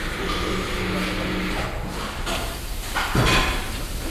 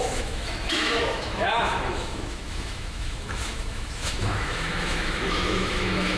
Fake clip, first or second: second